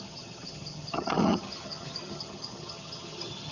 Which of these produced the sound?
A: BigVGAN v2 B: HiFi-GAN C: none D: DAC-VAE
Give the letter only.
B